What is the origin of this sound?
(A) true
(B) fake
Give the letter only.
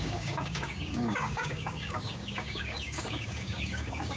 B